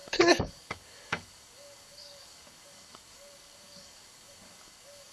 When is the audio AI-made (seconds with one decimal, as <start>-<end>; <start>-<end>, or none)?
0.0-5.1

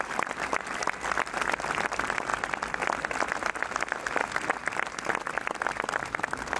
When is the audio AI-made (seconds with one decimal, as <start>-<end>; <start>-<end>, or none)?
none

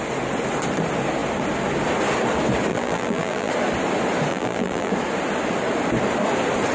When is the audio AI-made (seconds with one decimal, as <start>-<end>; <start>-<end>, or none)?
2.7-3.5; 4.3-4.9

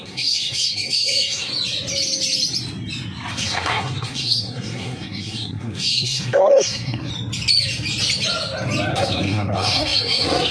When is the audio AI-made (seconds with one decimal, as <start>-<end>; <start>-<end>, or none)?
0.0-1.5; 3.3-7.1; 8.9-10.5

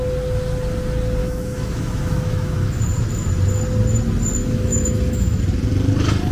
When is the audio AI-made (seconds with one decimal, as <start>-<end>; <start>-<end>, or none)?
1.2-2.8; 4.4-5.4

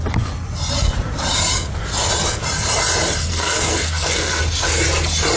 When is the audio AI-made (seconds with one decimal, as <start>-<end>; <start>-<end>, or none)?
3.3-4.4

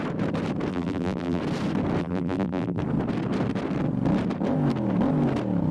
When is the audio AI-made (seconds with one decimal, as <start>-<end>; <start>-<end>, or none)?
0.7-1.4; 2.0-2.8

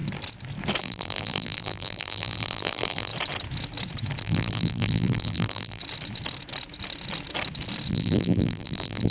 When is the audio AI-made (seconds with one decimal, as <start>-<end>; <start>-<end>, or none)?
0.8-3.1; 4.2-5.8; 7.9-9.1